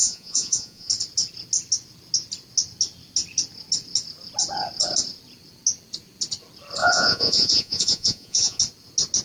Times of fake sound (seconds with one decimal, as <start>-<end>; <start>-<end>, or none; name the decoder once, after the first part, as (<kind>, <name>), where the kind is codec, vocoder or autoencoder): 0.0-0.9 (vocoder, Vocos); 6.8-8.6